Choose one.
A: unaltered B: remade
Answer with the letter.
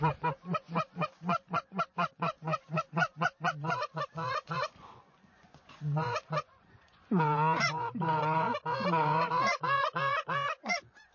B